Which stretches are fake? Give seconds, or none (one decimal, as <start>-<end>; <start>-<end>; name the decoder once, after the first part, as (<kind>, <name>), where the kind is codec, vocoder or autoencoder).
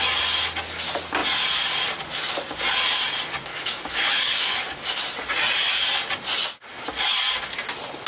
3.5-5.0 (autoencoder, DAC-VAE)